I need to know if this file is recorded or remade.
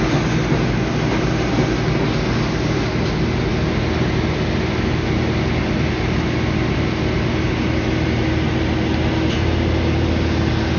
recorded